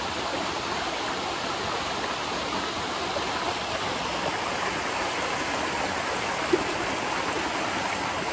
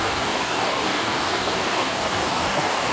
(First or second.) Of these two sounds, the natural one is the first